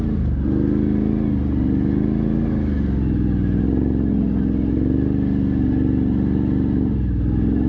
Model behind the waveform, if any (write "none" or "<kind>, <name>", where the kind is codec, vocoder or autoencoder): none